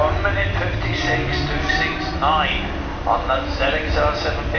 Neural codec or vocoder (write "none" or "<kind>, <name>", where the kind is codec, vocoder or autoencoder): none